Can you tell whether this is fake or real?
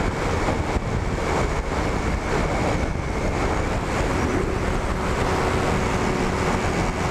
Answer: real